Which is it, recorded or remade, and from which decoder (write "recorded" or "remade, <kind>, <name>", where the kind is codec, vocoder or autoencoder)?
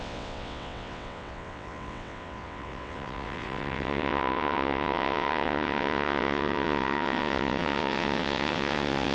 remade, vocoder, WaveNeXt